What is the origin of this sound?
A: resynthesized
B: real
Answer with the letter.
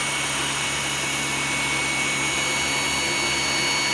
B